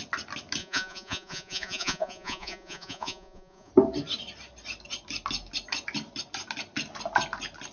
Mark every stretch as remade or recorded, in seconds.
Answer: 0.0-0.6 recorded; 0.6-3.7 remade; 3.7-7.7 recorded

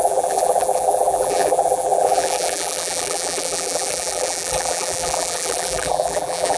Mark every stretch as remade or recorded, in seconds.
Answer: 0.0-6.6 remade

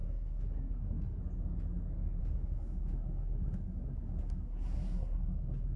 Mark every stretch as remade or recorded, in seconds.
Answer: 0.0-1.2 remade; 1.2-2.2 recorded; 2.2-5.8 remade